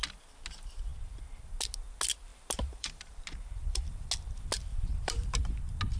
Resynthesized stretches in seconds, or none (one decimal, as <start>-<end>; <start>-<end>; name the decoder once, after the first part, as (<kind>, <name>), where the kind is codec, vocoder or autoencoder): 2.3-4.1 (vocoder, BigVGAN v2); 4.7-5.4